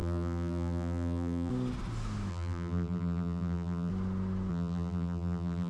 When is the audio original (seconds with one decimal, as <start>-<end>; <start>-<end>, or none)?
1.5-2.3; 3.9-4.5